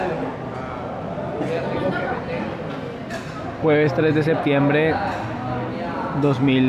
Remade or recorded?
recorded